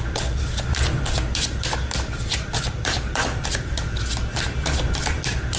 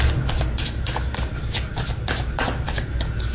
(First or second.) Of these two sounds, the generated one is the first